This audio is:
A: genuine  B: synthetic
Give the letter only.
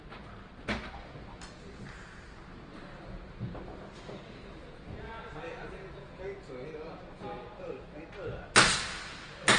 A